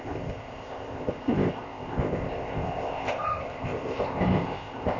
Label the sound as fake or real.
fake